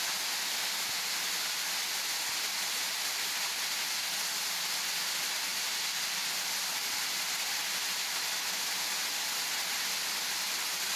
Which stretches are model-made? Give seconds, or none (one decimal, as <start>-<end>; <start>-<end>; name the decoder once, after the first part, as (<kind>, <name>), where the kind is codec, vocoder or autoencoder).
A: 5.5-11.0 (vocoder, BigVGAN v2)